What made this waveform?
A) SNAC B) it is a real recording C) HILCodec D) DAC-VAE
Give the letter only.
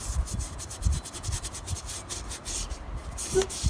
B